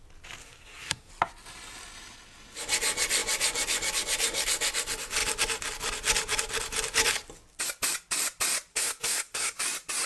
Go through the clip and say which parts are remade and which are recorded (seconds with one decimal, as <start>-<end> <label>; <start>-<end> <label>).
0.0-0.4 recorded; 0.4-1.1 remade; 1.1-8.7 recorded; 8.7-9.6 remade; 9.6-10.1 recorded